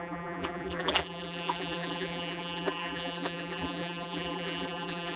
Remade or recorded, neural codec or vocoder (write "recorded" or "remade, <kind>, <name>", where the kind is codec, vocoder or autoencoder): remade, vocoder, BigVGAN v2